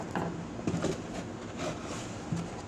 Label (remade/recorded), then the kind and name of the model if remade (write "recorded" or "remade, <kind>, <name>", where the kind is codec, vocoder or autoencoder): recorded